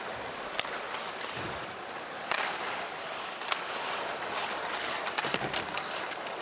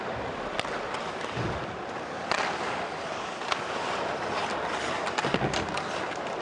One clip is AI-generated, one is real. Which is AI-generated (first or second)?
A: first